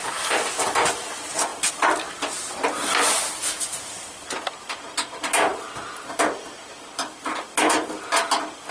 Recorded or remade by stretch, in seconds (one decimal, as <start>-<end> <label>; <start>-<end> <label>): 0.0-8.7 recorded